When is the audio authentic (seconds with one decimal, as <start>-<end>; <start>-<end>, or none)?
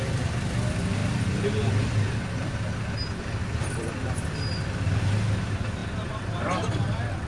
0.0-7.3